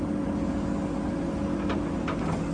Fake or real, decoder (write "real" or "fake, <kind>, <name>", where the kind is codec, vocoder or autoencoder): real